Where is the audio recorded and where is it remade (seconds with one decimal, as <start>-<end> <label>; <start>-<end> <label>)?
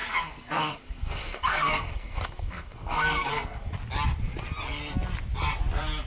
0.0-3.7 remade; 3.7-6.1 recorded